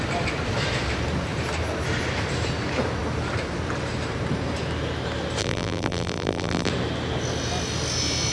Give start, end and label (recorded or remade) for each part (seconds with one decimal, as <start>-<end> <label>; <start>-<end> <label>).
0.0-5.4 recorded; 5.4-6.7 remade; 6.7-8.3 recorded